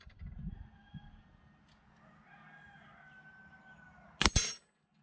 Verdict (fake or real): real